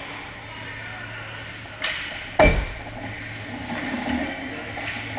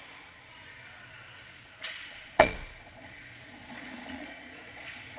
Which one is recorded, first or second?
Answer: first